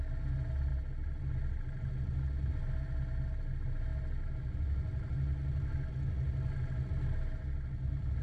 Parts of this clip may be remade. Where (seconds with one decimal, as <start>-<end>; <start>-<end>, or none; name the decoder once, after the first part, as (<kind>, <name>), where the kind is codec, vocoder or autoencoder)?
none